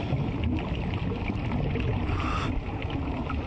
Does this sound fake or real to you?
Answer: real